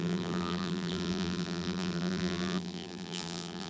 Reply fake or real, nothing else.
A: fake